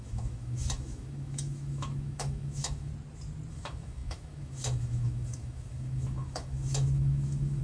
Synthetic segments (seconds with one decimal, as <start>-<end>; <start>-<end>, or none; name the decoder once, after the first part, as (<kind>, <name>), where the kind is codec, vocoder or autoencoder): 0.0-2.9 (autoencoder, DAC-VAE); 3.5-7.6